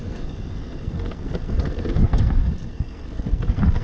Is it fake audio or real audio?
fake